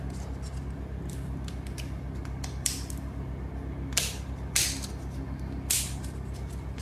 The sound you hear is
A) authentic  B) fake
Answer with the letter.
B